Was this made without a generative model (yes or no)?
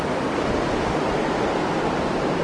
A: yes